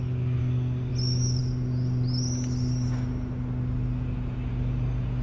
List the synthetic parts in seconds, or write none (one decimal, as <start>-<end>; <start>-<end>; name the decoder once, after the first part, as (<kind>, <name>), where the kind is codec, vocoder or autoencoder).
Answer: 0.4-0.9 (codec, SNAC)